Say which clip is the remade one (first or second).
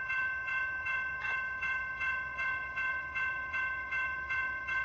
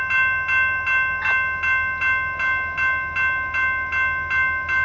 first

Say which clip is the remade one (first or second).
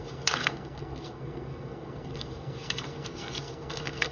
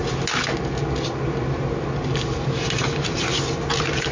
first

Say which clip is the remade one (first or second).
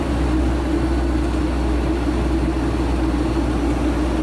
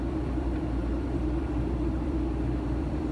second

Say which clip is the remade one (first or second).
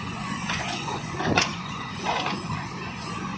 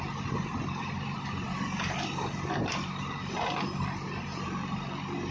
first